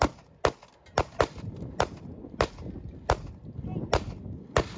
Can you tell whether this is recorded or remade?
recorded